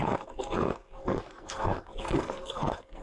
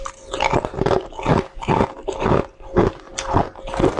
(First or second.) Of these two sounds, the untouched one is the second